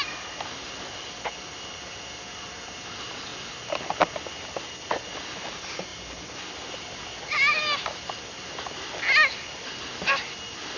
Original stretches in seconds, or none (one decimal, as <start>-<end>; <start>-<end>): 0.0-3.3; 3.8-5.9; 9.9-10.8

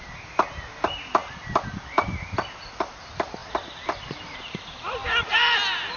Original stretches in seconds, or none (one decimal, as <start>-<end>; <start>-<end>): 0.0-3.4; 4.7-6.0

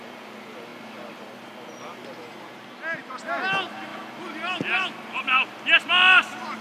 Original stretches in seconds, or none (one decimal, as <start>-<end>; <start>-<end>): 0.0-3.9; 5.6-6.6

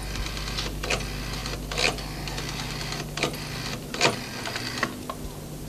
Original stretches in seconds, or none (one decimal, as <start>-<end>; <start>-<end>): 0.0-1.4; 4.8-5.7

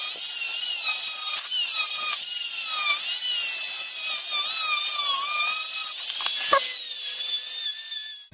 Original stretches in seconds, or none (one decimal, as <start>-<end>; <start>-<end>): 0.0-1.7; 2.5-8.3

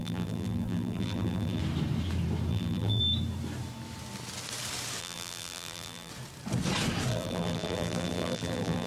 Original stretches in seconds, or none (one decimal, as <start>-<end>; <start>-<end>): 1.6-2.5; 3.0-5.0; 6.1-7.1

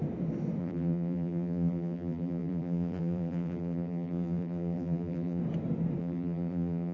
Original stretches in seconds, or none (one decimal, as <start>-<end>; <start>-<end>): 0.0-0.6; 5.4-6.0

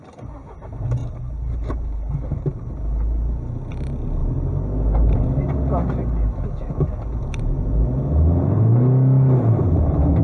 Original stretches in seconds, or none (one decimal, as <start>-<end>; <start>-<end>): 0.0-1.0; 2.7-10.2